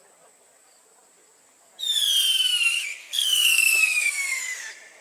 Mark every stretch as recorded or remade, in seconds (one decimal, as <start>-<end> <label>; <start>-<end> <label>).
0.0-3.0 recorded; 3.0-4.4 remade; 4.4-5.0 recorded